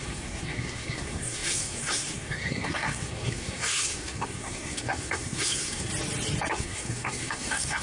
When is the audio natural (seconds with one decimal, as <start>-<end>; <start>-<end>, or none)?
5.9-6.5

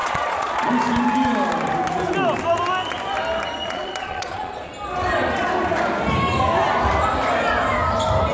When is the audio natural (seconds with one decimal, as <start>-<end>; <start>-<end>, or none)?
0.7-3.6; 4.7-8.3

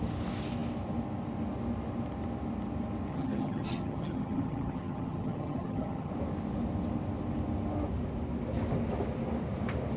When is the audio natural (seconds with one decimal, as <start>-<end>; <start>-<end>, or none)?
0.0-3.1; 6.1-10.0

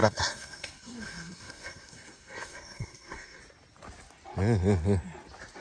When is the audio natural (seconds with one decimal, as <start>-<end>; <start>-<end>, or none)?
3.4-5.6

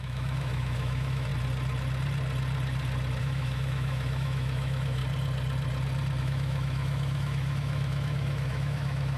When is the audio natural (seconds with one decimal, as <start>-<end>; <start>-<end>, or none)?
1.3-3.2; 5.0-6.2